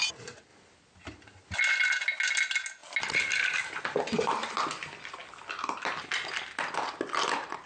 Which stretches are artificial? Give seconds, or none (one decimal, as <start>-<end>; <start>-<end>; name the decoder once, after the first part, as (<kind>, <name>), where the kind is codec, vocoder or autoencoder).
none